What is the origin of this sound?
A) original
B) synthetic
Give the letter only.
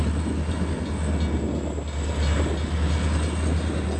A